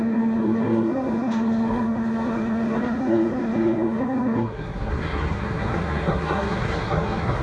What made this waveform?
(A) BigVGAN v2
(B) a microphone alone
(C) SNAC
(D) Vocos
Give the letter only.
C